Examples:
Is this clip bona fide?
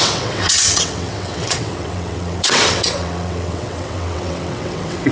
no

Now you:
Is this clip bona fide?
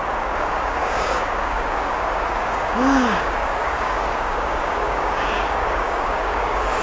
no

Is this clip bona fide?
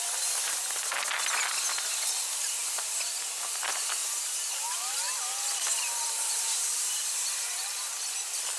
yes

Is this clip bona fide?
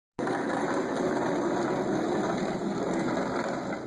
yes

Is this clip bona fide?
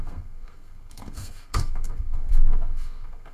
no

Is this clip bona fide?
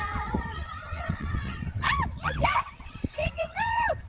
no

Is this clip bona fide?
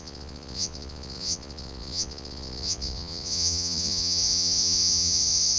no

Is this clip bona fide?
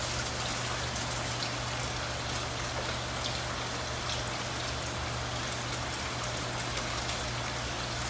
yes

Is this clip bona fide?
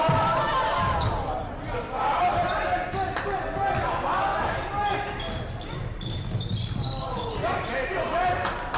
yes